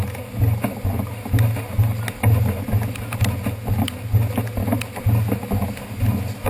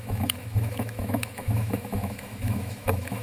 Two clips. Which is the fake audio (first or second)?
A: second